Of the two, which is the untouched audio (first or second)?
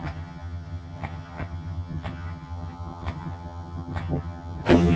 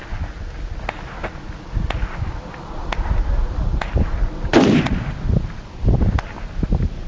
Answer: second